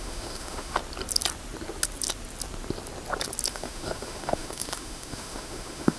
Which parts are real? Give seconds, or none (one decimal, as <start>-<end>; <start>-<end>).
0.8-3.5